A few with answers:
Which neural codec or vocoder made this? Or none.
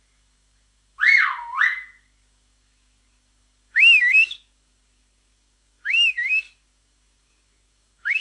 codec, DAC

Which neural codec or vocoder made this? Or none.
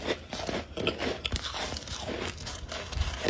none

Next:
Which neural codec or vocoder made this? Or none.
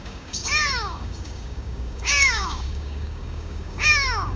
codec, DAC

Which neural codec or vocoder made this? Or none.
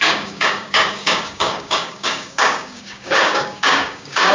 codec, DAC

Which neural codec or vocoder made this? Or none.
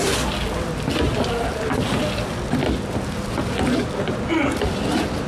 none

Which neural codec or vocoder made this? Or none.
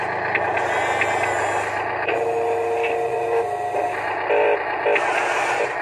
none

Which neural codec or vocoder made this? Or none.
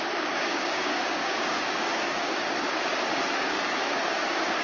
codec, DAC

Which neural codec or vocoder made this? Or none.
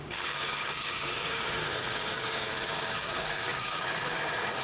codec, DAC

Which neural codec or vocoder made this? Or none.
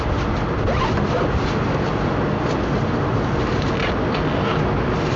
none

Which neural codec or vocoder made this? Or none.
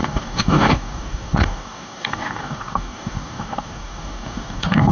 codec, DAC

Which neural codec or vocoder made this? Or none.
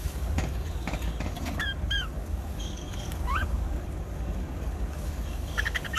codec, DAC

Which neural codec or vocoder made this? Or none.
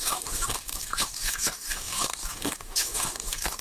codec, DAC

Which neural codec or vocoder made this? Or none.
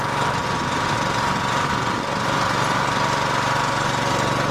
none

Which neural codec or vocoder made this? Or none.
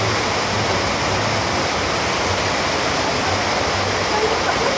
none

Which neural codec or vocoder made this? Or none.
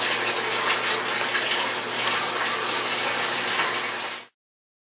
none